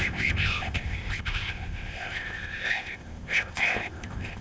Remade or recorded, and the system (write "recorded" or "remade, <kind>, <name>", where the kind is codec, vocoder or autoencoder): remade, codec, ZipCodec